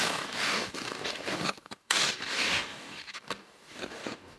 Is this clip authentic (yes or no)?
no